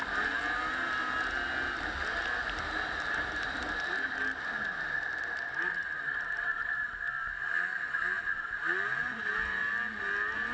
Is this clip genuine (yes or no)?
yes